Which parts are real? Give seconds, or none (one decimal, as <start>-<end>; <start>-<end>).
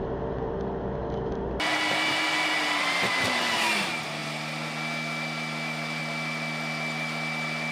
0.0-7.7